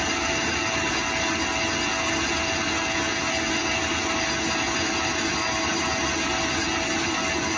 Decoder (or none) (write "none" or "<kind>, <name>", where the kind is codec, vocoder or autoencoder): none